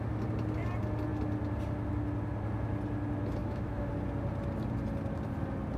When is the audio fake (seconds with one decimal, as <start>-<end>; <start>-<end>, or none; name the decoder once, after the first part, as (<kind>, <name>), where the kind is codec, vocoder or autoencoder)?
3.4-3.9 (autoencoder, DAC-VAE)